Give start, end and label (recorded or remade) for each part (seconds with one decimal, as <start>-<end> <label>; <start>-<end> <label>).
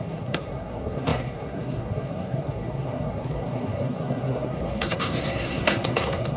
0.0-6.4 remade